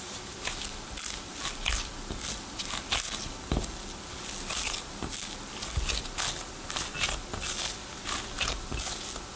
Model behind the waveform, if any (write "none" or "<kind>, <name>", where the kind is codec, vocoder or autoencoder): none